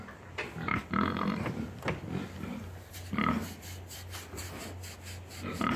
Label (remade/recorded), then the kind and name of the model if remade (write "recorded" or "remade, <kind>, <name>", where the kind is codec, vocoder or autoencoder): recorded